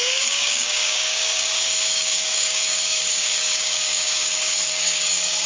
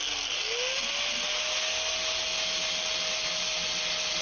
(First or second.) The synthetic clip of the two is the first